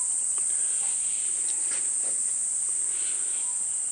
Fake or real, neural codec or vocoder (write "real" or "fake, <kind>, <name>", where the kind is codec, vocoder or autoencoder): real